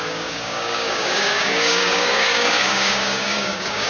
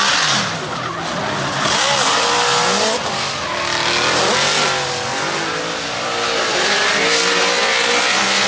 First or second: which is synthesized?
first